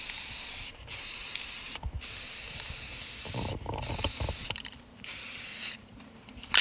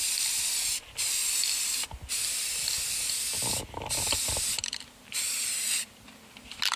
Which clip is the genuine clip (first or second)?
second